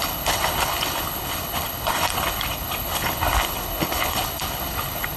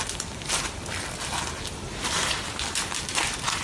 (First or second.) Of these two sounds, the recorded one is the second